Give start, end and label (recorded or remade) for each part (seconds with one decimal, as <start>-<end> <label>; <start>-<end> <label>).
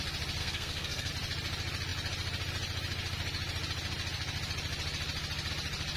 0.0-0.4 recorded; 0.4-1.1 remade; 1.1-6.0 recorded